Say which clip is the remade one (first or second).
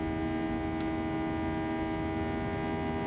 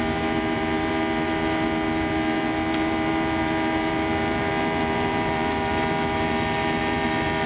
second